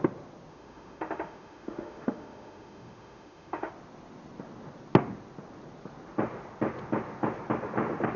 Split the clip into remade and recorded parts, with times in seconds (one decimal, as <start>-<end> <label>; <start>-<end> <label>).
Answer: 0.0-0.5 recorded; 0.5-3.7 remade; 3.7-8.2 recorded

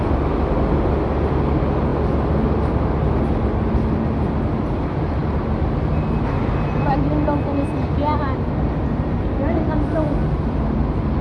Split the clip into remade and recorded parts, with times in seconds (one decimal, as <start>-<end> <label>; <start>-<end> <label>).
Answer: 0.0-11.2 recorded

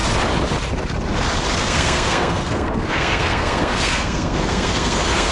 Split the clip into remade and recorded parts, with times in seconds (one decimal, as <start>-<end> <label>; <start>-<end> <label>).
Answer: 0.0-1.6 recorded; 1.6-5.3 remade

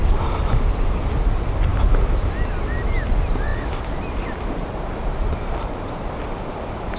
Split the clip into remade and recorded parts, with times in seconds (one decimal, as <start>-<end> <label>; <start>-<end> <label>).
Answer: 0.0-7.0 recorded

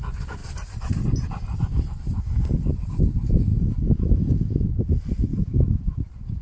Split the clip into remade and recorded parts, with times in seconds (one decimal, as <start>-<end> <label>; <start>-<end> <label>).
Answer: 0.0-3.5 recorded; 3.5-4.8 remade; 4.8-5.3 recorded; 5.3-6.0 remade; 6.0-6.4 recorded

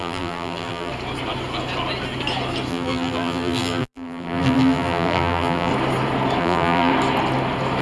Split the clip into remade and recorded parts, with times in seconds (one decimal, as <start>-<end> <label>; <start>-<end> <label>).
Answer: 0.0-0.9 remade; 0.9-2.7 recorded; 2.7-5.7 remade; 5.7-6.4 recorded; 6.4-6.9 remade; 6.9-7.8 recorded

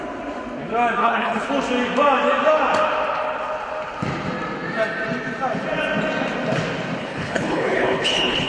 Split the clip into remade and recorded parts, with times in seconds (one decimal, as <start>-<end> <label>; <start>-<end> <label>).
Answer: 0.0-1.0 recorded; 1.0-1.5 remade; 1.5-7.0 recorded; 7.0-8.5 remade

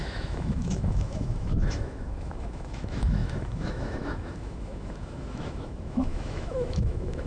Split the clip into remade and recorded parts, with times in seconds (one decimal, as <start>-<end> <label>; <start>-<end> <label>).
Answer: 0.0-7.3 remade